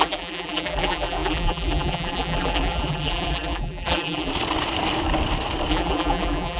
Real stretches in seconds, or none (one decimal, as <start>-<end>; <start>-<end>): 4.3-5.7